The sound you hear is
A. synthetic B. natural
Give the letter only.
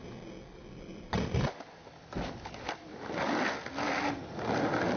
B